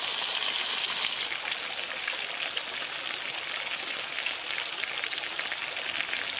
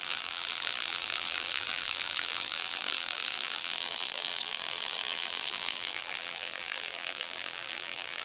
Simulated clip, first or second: second